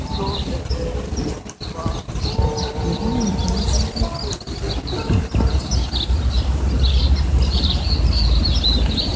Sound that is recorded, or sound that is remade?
recorded